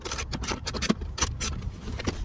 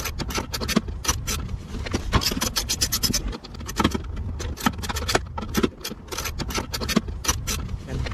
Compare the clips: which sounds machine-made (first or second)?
first